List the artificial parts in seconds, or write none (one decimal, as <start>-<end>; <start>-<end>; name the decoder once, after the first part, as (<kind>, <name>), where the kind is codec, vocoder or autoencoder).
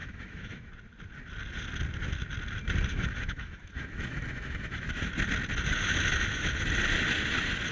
0.0-0.7 (autoencoder, DAC-VAE); 2.9-5.1